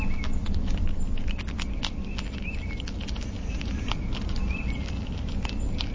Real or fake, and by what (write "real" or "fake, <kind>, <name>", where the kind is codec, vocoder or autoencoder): real